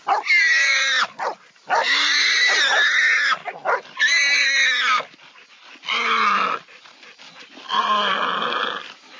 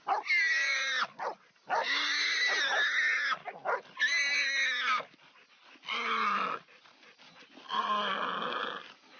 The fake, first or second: first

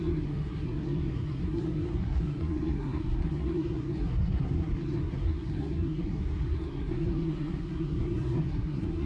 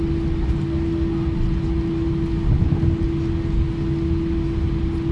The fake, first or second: first